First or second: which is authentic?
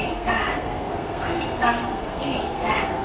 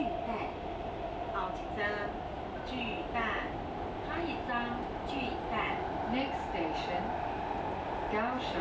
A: second